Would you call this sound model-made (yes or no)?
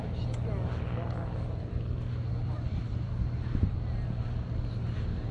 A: no